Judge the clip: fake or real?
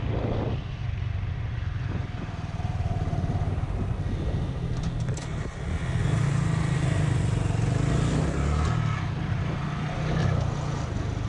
real